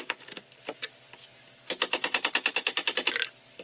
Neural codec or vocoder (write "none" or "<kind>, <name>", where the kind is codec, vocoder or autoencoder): none